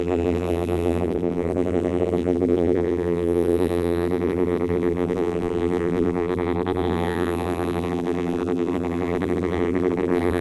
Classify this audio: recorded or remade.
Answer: remade